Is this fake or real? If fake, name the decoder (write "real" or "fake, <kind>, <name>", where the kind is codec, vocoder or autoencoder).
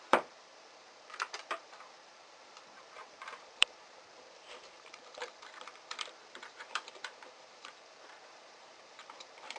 fake, vocoder, BigVGAN v2